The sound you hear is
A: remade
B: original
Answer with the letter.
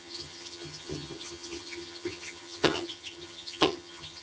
A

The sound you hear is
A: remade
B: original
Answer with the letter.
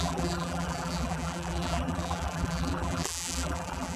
A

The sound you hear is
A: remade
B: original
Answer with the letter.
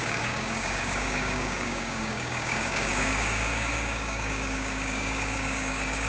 A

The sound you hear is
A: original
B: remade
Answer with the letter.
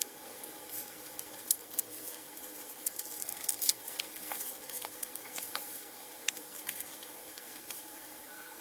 B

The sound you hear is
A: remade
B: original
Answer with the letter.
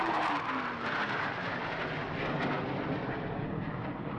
B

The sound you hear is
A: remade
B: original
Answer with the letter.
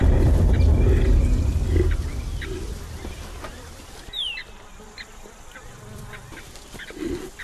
A